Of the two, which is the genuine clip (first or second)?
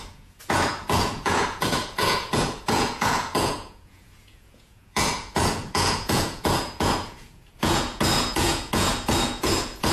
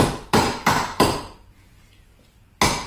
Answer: second